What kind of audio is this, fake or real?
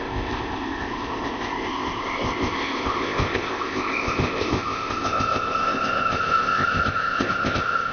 fake